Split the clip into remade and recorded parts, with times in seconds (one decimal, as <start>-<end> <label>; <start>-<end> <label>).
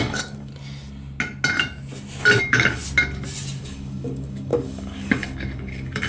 0.0-0.5 remade; 0.5-2.4 recorded; 2.4-2.8 remade; 2.8-3.6 recorded; 3.6-6.1 remade